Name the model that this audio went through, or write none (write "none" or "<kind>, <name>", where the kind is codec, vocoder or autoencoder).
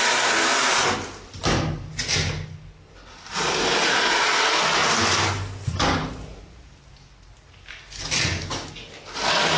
none